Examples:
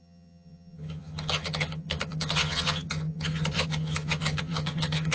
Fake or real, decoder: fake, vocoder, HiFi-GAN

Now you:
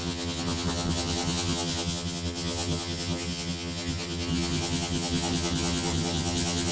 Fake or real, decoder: fake, vocoder, HiFi-GAN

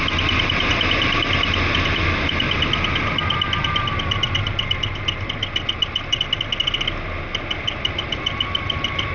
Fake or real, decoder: real